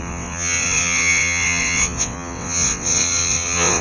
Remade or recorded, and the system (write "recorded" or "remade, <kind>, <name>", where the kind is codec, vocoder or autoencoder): remade, vocoder, WaveNeXt